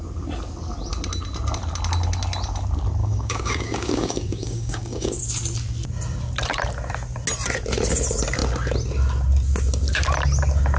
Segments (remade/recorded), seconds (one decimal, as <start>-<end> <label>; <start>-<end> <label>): 0.0-3.0 recorded; 3.0-5.2 remade; 5.2-10.8 recorded

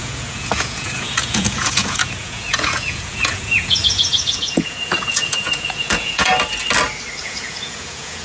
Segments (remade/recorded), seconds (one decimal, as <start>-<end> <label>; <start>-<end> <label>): 0.0-6.3 remade; 6.3-7.2 recorded; 7.2-8.2 remade

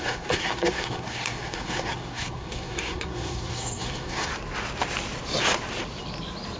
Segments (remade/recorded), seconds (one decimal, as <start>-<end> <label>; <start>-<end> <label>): 0.0-4.3 remade; 4.3-6.6 recorded